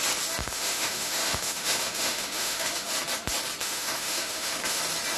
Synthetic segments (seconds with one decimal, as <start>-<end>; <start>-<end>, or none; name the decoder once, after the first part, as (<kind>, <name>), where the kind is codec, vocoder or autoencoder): 0.4-2.9 (autoencoder, DAC-VAE); 3.6-4.8